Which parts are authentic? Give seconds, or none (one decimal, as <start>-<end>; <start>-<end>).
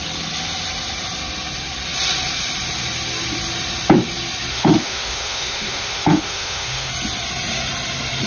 0.0-4.5; 6.9-8.3